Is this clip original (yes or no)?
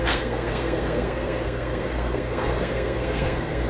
no